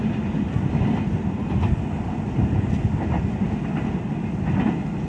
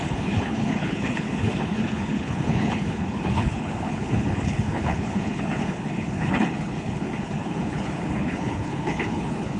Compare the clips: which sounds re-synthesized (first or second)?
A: second